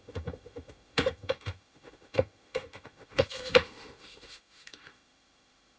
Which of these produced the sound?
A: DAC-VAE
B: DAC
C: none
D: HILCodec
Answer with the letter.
A